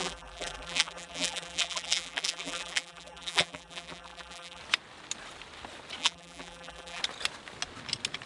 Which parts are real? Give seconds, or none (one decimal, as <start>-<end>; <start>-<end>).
4.6-6.0; 7.0-8.3